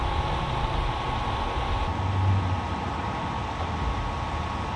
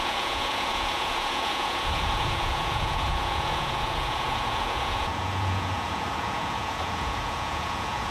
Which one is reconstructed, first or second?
second